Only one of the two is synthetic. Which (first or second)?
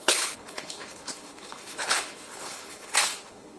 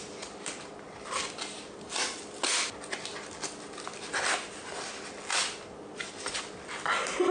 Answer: first